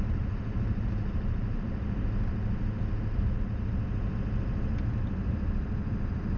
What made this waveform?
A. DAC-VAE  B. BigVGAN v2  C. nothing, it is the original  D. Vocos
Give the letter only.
C